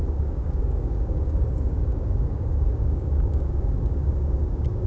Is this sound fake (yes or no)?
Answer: yes